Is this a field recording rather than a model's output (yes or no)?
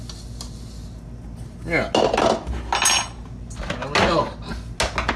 yes